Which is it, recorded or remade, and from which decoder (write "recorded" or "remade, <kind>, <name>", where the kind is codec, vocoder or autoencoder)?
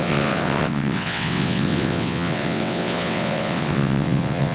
remade, vocoder, WaveNeXt